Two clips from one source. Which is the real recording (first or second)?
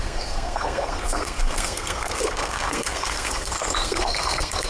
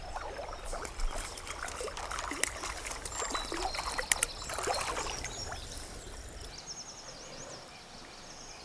second